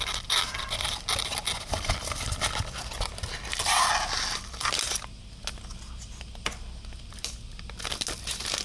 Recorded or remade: recorded